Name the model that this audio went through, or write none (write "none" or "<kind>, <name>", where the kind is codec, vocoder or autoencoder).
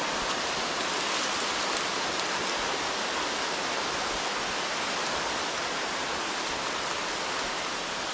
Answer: none